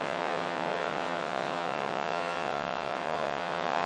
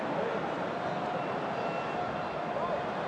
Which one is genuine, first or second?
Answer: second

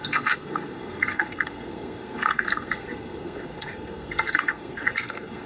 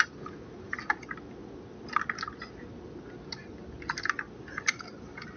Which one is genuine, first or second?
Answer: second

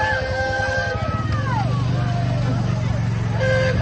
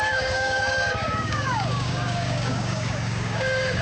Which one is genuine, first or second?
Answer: first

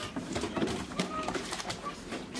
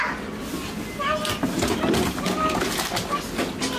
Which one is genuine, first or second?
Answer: second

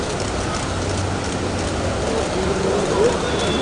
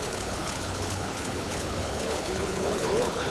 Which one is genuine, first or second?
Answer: first